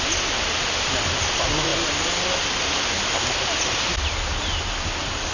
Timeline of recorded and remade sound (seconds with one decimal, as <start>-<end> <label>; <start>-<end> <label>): 0.0-5.3 recorded